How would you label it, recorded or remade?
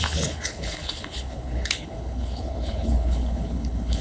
remade